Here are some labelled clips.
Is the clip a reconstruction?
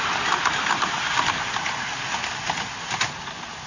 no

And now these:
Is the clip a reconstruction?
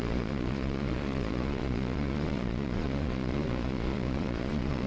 yes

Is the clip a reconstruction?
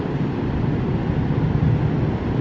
no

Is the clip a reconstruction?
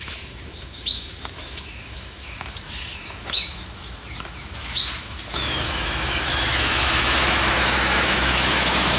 yes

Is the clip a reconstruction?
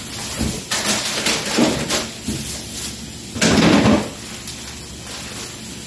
no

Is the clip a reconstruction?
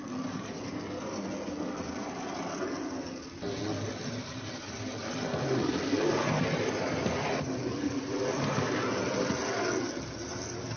no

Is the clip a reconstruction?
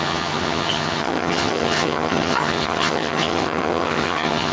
yes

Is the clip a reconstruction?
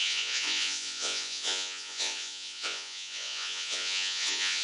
yes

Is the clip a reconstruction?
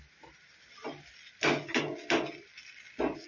no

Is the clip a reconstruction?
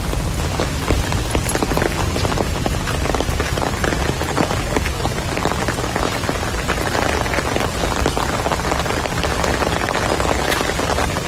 no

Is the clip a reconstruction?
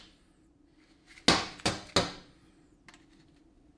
no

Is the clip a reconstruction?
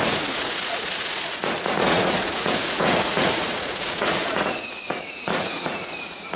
yes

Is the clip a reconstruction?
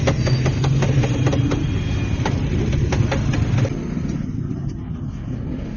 no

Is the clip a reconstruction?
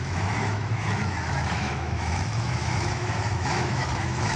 yes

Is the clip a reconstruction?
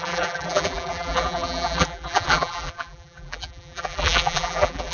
yes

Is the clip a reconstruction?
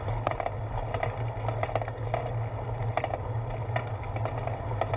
no